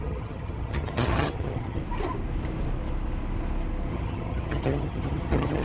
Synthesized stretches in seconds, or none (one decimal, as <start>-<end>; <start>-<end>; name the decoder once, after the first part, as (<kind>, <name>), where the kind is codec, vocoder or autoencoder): 0.0-1.8 (vocoder, HiFi-GAN); 3.9-5.6

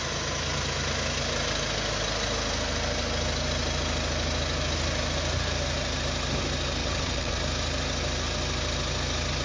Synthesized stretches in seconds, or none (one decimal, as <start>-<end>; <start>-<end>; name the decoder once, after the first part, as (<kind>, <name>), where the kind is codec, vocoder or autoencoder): 6.8-7.4 (vocoder, WaveNeXt)

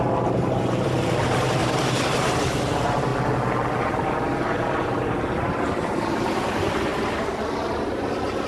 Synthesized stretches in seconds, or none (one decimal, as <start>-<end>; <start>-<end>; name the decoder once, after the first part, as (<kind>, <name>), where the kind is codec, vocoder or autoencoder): 0.0-3.1 (vocoder, BigVGAN v2); 3.8-8.5